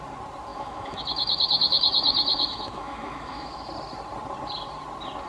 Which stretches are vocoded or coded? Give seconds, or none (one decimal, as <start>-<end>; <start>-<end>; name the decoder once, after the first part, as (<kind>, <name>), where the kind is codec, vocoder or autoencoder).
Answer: 0.5-3.7 (autoencoder, DAC-VAE)